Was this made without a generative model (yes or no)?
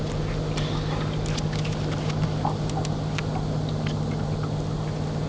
yes